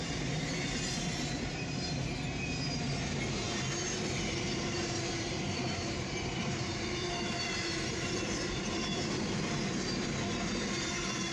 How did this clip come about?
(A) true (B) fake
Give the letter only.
A